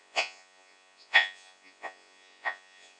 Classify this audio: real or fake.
fake